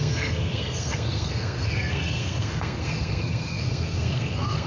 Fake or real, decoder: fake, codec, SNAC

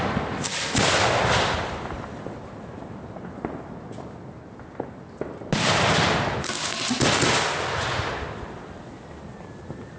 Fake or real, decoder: real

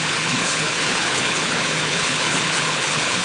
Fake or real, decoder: fake, codec, HILCodec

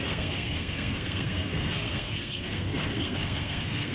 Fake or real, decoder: fake, codec, SNAC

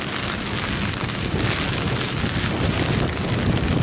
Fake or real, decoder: real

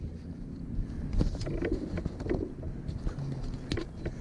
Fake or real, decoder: real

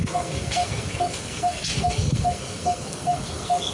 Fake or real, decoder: fake, codec, SNAC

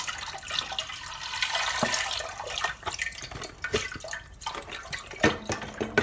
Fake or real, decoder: real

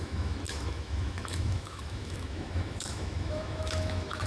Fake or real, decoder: fake, autoencoder, DAC-VAE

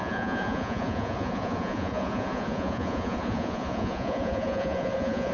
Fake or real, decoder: fake, vocoder, Vocos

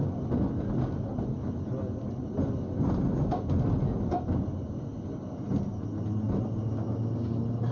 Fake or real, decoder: real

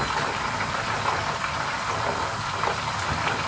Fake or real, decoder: real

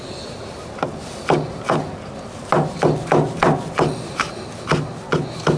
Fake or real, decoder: real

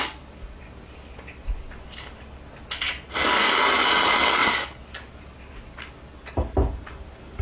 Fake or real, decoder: real